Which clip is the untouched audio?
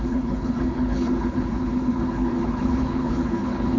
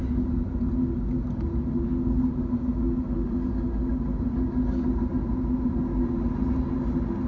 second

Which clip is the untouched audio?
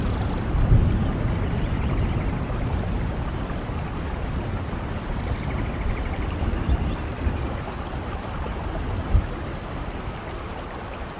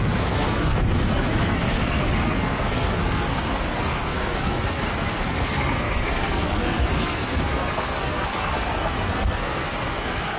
first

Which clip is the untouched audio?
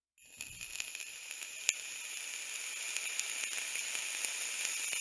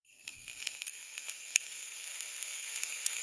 first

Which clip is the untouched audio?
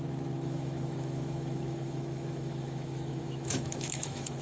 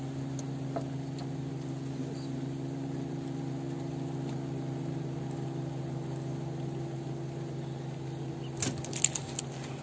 second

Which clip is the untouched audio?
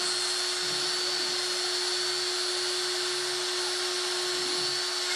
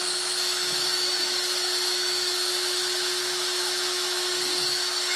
first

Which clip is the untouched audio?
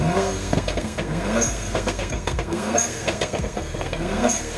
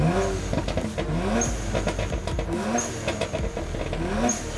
second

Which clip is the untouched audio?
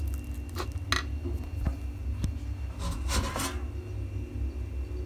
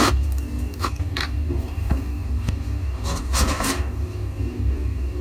first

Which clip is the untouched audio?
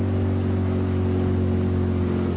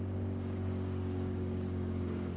first